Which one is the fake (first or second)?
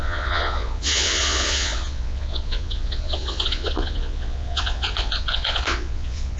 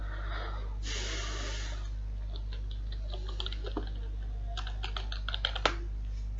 first